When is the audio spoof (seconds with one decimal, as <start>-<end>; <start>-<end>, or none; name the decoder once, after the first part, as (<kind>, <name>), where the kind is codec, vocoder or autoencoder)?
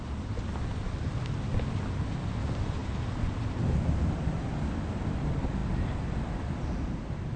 none